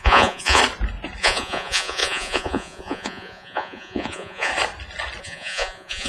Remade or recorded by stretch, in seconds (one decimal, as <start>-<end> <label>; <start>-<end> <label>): 0.0-0.6 remade; 0.6-1.2 recorded; 1.2-4.5 remade; 4.5-5.2 recorded; 5.2-6.1 remade